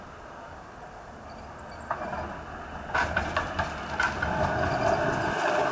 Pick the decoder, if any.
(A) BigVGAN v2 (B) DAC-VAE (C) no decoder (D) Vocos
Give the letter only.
C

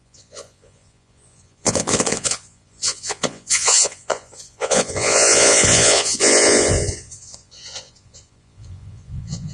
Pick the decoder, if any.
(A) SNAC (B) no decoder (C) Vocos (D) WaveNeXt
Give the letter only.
C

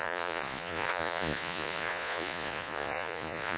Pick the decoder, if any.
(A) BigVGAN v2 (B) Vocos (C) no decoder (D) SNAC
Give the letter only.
B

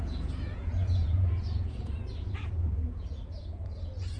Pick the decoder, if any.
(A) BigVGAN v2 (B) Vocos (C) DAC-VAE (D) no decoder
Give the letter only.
B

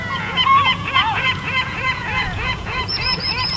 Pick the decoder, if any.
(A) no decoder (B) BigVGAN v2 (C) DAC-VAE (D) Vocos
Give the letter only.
D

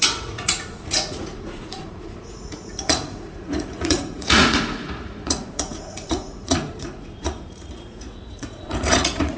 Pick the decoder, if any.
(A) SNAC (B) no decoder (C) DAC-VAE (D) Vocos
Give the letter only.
D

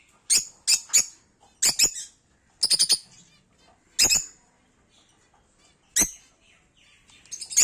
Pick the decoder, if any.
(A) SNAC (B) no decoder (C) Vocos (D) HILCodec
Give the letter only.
B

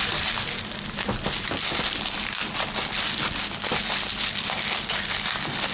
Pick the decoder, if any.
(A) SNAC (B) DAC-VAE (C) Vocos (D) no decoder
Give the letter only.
D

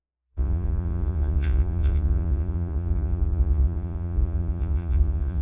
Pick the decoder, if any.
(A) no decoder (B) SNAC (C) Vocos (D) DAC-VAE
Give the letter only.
C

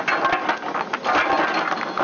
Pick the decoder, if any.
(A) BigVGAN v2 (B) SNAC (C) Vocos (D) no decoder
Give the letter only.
D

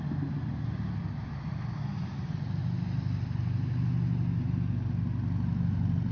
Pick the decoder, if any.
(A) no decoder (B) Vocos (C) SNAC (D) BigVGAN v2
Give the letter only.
A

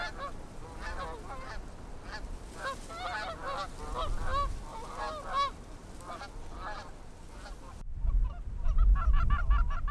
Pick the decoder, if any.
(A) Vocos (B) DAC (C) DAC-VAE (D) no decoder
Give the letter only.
D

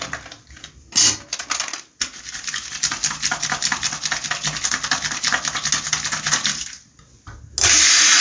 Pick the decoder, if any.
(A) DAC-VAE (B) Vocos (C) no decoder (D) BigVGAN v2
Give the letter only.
C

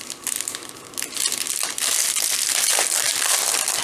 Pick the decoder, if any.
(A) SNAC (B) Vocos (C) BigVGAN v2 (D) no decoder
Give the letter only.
D